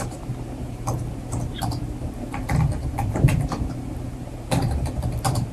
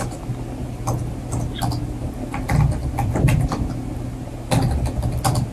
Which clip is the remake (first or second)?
first